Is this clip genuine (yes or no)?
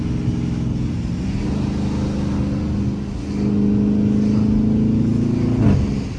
yes